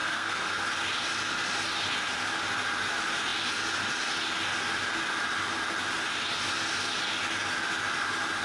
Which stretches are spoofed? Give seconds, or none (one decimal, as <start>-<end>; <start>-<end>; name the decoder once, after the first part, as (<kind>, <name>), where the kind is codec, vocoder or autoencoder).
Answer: 0.0-0.6 (codec, SNAC)